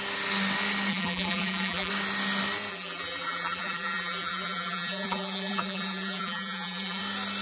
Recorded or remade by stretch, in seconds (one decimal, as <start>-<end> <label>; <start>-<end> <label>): 0.0-0.9 recorded; 0.9-1.9 remade; 1.9-2.7 recorded; 2.7-7.0 remade; 7.0-7.4 recorded